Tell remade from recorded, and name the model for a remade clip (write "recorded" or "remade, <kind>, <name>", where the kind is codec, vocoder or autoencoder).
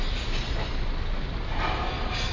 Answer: recorded